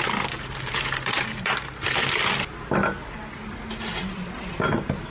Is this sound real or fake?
real